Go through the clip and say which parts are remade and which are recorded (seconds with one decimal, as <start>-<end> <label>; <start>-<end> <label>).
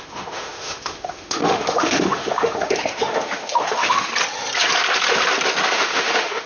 0.0-4.1 remade; 4.1-5.7 recorded; 5.7-6.5 remade